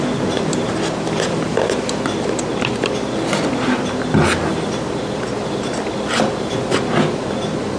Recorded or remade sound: recorded